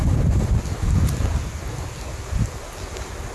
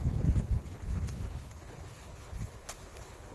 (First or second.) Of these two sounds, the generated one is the second